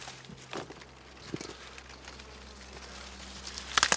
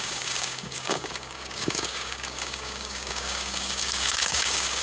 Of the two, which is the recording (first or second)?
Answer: first